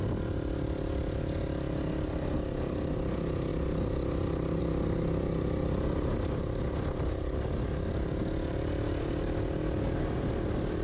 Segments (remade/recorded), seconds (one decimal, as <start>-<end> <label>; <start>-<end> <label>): 0.0-10.8 recorded